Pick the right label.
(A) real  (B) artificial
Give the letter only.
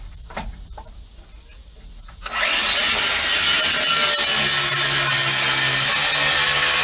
A